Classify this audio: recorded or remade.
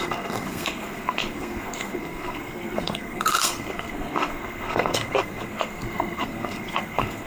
remade